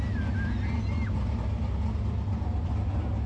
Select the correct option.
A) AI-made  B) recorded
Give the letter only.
B